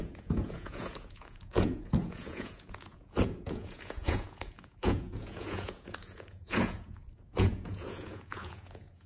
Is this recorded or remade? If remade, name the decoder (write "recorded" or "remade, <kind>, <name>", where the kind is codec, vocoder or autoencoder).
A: remade, vocoder, Vocos